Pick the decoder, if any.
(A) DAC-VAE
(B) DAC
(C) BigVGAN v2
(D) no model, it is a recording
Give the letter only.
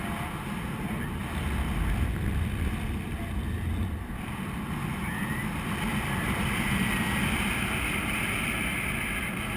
D